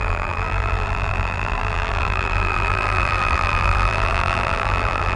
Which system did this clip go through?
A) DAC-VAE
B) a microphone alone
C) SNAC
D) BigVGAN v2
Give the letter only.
D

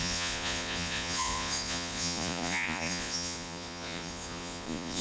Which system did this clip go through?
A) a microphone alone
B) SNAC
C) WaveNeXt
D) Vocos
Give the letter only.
D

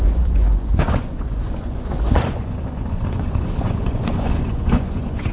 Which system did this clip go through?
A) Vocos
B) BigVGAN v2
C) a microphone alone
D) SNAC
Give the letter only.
A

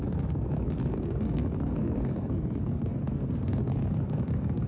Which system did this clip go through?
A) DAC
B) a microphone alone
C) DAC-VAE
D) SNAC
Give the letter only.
D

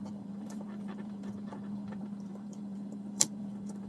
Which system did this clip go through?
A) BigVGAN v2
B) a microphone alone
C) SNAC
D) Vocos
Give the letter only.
A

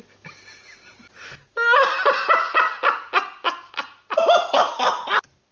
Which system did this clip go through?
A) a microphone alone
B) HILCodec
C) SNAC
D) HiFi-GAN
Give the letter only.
A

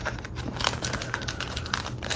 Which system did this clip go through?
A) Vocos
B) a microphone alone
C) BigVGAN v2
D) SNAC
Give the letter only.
C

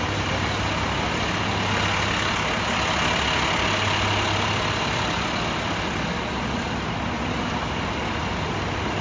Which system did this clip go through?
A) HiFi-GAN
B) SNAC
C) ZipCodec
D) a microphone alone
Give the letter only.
D